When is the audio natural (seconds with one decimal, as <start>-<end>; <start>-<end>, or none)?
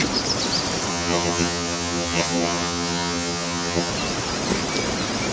0.0-0.9; 3.9-5.3